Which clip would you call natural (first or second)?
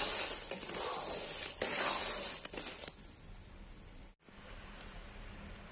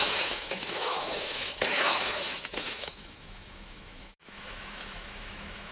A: first